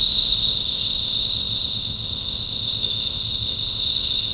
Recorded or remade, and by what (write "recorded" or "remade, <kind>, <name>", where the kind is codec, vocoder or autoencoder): remade, codec, ZipCodec